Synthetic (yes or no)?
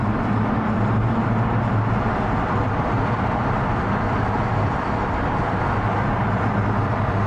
yes